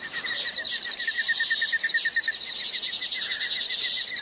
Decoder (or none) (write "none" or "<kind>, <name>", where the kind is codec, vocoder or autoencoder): none